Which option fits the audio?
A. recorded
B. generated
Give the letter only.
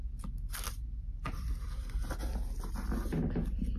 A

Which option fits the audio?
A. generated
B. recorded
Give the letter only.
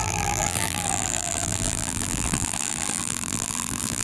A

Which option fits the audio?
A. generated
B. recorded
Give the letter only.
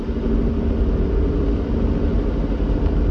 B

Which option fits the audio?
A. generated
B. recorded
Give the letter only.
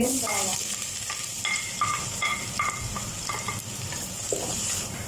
A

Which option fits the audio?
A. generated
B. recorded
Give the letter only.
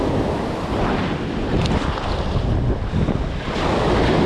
A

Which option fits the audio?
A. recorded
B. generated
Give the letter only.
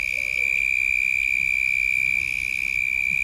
A